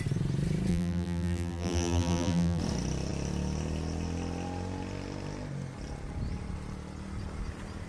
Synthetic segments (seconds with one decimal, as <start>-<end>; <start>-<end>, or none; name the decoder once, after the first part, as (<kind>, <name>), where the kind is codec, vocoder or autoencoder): 0.7-2.6 (vocoder, BigVGAN v2)